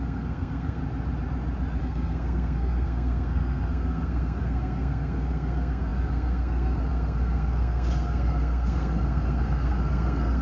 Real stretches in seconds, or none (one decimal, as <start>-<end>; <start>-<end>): 0.8-1.8